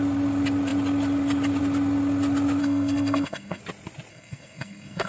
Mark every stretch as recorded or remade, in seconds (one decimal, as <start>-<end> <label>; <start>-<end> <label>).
0.0-2.6 recorded; 2.6-3.6 remade; 3.6-4.1 recorded; 4.1-5.1 remade